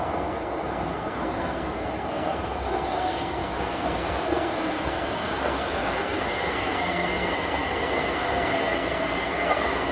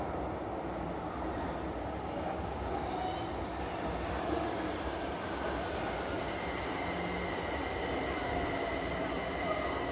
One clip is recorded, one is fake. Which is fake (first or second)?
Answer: first